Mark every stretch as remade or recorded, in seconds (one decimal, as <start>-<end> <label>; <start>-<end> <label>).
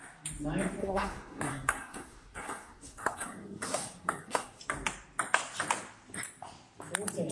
0.0-0.8 recorded; 0.8-4.6 remade; 4.6-7.3 recorded